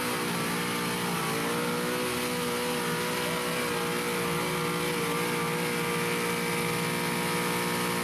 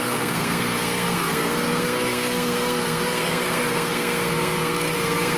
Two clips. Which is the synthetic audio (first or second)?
second